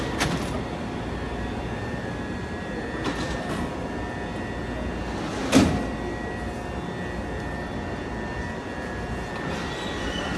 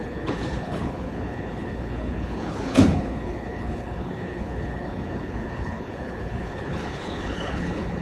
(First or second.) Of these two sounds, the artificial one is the second